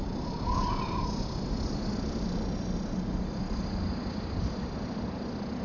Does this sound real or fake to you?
real